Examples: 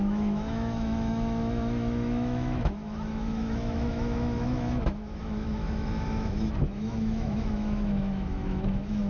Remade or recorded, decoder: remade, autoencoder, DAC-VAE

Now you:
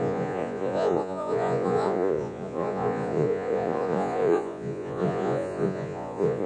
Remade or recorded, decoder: remade, vocoder, Vocos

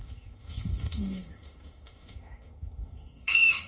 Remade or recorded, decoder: remade, autoencoder, DAC-VAE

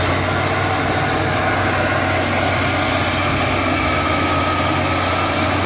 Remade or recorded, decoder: recorded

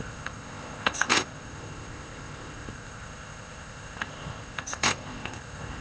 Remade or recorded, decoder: remade, codec, ZipCodec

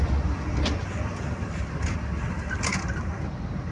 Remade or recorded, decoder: recorded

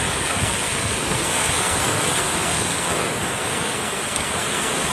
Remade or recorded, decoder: remade, codec, SNAC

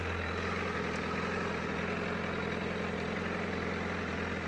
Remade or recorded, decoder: recorded